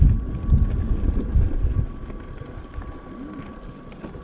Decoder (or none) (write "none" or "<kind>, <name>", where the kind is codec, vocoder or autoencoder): none